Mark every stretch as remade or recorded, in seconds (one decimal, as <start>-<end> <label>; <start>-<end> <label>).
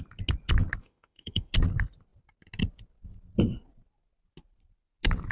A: 0.0-0.8 recorded; 0.8-1.5 remade; 1.5-5.3 recorded